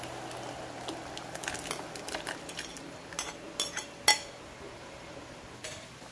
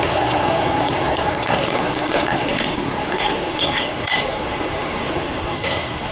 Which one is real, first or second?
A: first